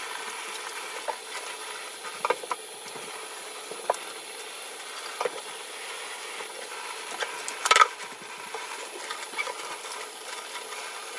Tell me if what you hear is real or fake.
real